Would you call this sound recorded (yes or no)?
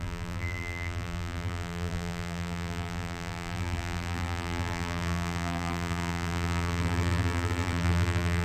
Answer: no